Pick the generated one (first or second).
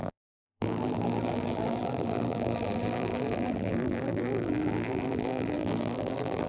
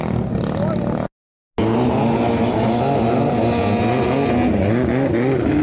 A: first